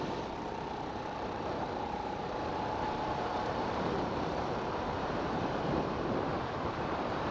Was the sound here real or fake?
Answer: fake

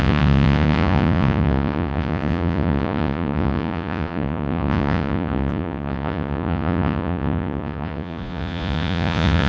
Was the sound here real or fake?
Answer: fake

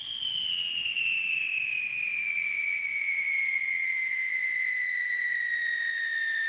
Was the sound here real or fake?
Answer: fake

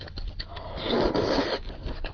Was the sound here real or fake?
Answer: real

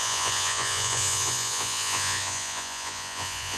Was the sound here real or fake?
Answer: fake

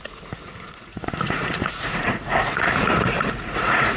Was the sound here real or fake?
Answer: fake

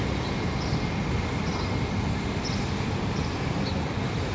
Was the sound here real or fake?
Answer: real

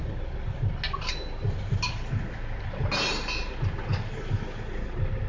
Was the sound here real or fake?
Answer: real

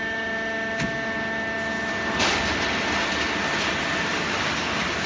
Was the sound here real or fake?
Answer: real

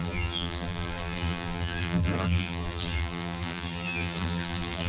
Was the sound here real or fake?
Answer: fake